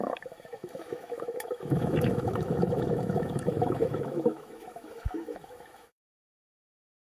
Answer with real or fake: fake